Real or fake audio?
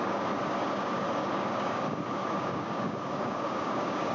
fake